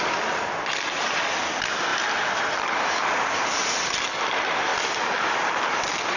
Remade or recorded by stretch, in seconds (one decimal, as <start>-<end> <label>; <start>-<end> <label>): 0.0-6.2 recorded